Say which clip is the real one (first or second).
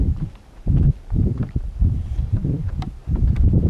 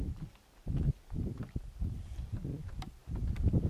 second